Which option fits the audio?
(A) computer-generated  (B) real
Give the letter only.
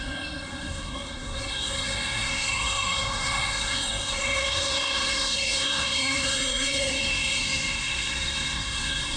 A